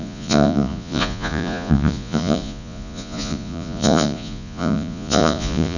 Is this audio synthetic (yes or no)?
yes